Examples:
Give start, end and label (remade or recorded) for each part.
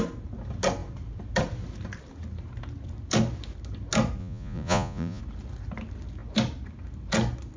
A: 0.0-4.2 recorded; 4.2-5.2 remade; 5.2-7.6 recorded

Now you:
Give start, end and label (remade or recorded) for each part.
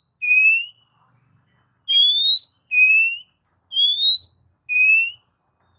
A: 0.0-5.8 recorded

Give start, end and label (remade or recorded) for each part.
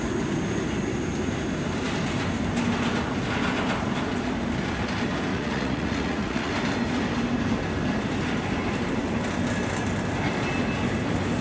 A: 0.0-5.3 recorded; 5.3-6.5 remade; 6.5-11.4 recorded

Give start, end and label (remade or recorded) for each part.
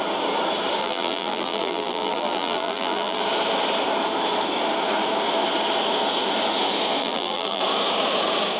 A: 0.0-0.8 recorded; 0.8-3.2 remade; 3.2-7.0 recorded; 7.0-7.6 remade; 7.6-8.6 recorded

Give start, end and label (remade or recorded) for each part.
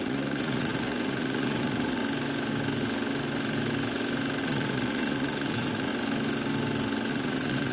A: 0.0-2.0 remade; 2.0-4.4 recorded; 4.4-5.9 remade; 5.9-7.1 recorded; 7.1-7.7 remade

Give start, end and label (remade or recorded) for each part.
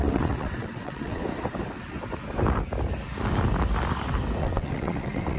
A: 0.0-1.2 remade; 1.2-4.4 recorded; 4.4-5.4 remade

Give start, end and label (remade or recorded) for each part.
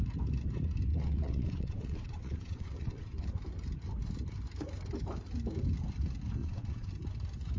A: 0.0-0.9 recorded; 0.9-3.3 remade; 3.3-6.4 recorded; 6.4-6.9 remade; 6.9-7.6 recorded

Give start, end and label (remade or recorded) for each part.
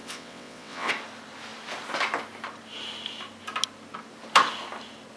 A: 0.0-0.9 remade; 0.9-5.2 recorded